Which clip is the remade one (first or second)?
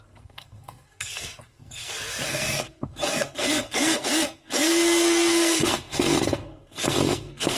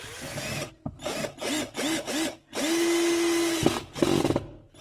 first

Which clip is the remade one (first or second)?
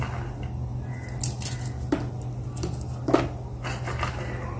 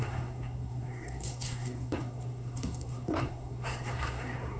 second